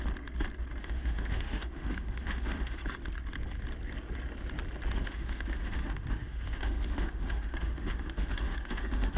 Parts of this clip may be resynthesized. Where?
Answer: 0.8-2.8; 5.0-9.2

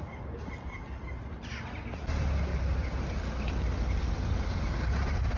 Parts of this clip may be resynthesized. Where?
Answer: none